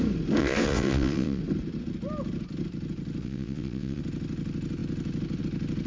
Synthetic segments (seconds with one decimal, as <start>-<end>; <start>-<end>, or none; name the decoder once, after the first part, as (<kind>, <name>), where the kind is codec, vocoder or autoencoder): 0.4-1.4 (vocoder, WaveNeXt); 3.2-4.0